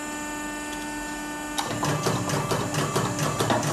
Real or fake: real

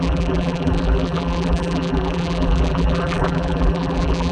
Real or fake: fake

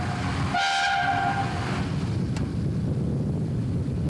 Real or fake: real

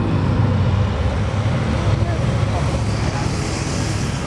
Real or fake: real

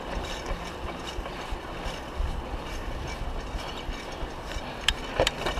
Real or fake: fake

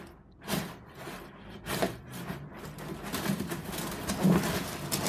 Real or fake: real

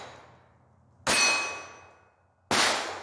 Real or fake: real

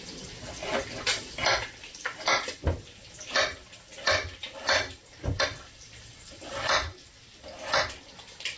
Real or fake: real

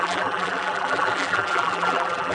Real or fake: fake